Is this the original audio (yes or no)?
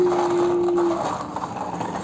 yes